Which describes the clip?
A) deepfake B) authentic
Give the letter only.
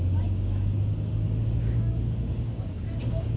A